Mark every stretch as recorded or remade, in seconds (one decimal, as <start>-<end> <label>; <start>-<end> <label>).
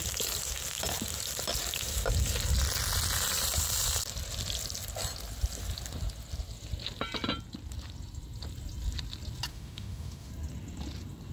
0.0-9.5 recorded; 9.5-10.3 remade; 10.3-11.3 recorded